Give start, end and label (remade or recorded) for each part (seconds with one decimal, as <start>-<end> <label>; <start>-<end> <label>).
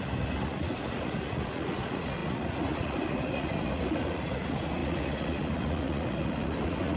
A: 0.0-7.0 remade